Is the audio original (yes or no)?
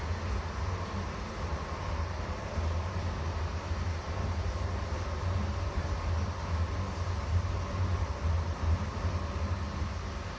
yes